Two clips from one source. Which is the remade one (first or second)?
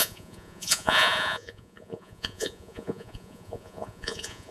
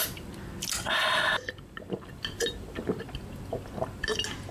first